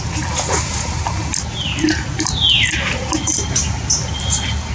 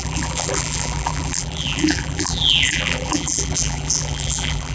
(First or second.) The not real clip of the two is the second